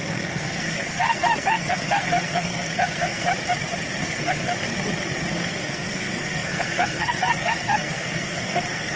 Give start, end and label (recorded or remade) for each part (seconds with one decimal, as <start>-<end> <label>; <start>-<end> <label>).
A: 0.0-3.3 remade; 3.3-4.0 recorded; 4.0-4.5 remade; 4.5-5.3 recorded; 5.3-9.0 remade